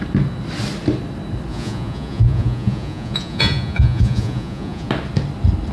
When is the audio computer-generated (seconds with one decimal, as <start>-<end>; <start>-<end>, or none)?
1.5-4.9